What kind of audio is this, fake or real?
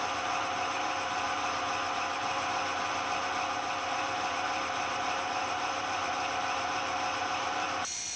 fake